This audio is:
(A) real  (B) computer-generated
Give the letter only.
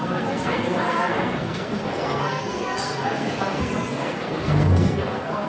B